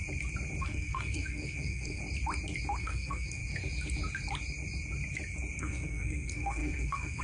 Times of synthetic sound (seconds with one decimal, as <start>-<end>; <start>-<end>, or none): 0.6-2.0; 2.8-3.4; 5.6-7.2